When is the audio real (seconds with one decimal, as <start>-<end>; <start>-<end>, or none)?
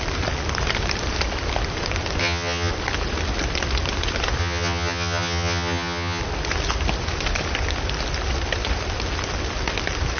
0.0-2.2; 2.7-4.4; 6.2-10.2